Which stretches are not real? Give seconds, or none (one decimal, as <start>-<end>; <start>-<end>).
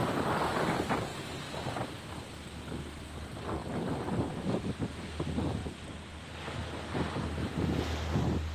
5.6-6.2